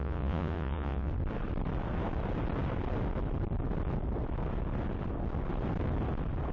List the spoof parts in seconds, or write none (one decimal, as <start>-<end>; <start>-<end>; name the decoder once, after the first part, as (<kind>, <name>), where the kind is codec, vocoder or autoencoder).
0.0-1.1 (vocoder, Vocos)